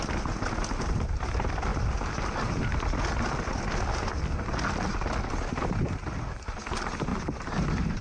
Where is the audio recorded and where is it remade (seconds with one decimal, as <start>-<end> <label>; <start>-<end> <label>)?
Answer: 0.0-7.1 recorded; 7.1-8.0 remade